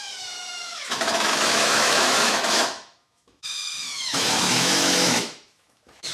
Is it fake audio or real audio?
fake